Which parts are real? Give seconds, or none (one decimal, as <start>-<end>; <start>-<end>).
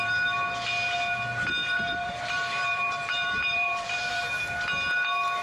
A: 0.0-1.6; 4.2-5.4